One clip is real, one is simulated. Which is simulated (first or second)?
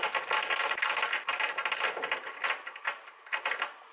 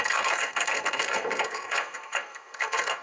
second